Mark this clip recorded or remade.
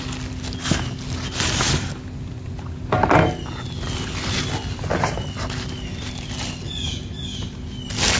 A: recorded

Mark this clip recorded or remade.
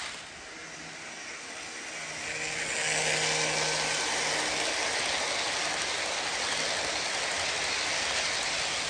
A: recorded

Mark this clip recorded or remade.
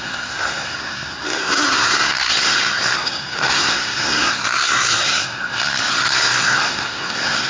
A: remade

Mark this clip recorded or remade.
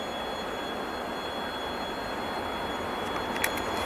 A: recorded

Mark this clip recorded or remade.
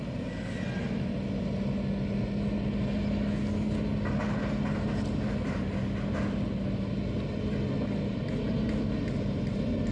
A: recorded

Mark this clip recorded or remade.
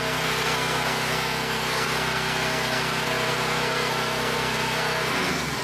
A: remade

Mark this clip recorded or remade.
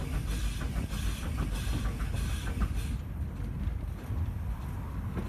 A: recorded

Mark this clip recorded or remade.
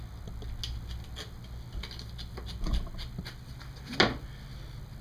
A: recorded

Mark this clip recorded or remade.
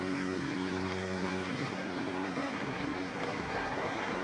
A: remade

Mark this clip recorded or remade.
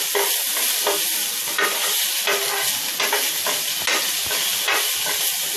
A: recorded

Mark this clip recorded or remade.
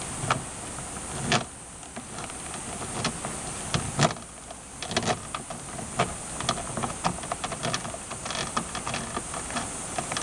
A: recorded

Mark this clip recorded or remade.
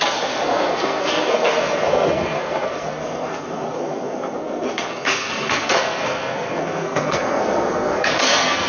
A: remade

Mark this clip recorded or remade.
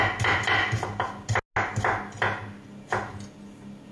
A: recorded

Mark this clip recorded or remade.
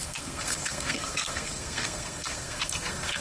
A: remade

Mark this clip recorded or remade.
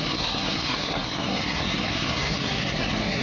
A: remade